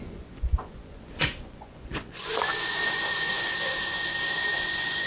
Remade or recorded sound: remade